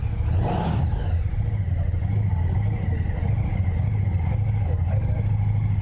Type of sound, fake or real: real